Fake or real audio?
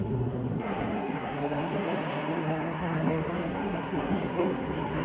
fake